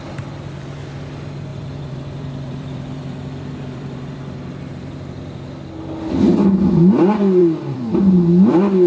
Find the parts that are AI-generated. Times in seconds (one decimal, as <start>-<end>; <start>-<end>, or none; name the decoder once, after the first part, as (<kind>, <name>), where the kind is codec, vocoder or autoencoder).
1.5-4.7 (vocoder, BigVGAN v2); 7.4-8.0